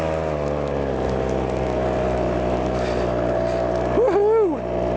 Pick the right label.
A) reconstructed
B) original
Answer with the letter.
B